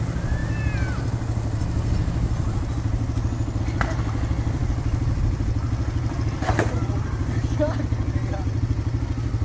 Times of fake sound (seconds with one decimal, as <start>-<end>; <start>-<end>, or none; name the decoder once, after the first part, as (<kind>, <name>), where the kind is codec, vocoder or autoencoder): none